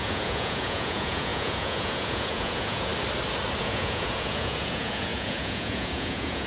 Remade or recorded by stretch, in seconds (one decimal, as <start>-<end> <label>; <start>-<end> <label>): 0.0-2.9 remade; 2.9-3.6 recorded; 3.6-6.5 remade